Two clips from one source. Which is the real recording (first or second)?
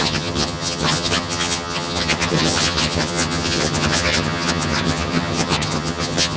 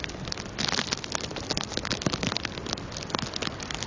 second